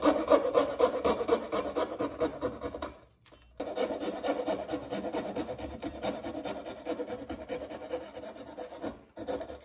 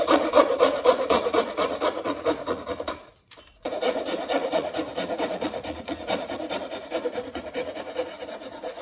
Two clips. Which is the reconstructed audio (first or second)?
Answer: second